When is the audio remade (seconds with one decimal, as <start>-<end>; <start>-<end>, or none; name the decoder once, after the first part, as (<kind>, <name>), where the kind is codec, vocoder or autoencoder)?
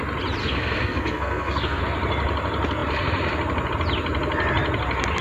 0.4-1.8 (codec, SNAC)